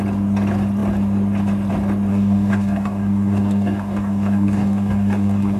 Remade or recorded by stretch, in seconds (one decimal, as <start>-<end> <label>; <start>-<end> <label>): 0.0-2.1 recorded; 2.1-5.6 remade